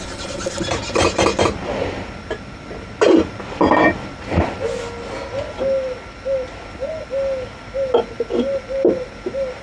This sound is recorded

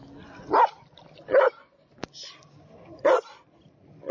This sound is recorded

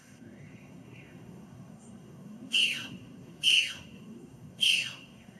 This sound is remade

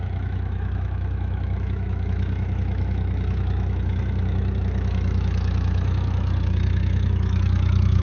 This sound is remade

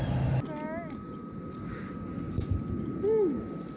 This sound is recorded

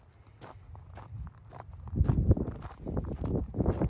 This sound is recorded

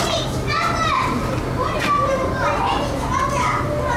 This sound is recorded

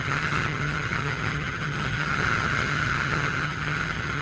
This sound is remade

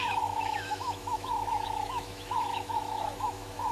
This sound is remade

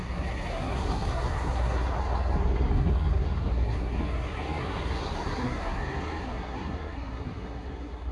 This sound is remade